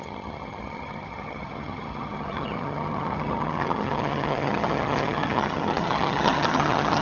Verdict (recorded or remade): remade